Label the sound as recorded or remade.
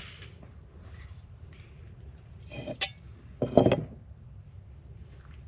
recorded